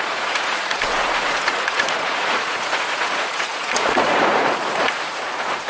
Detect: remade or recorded remade